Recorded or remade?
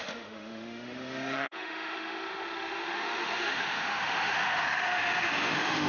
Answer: remade